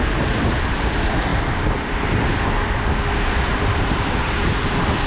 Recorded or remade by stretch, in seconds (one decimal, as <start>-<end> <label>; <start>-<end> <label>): 0.0-5.1 recorded